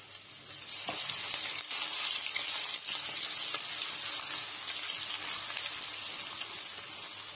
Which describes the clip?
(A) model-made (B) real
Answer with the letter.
B